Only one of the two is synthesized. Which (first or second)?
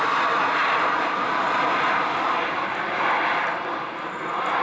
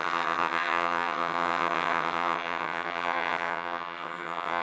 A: second